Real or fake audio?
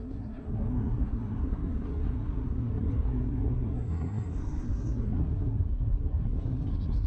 fake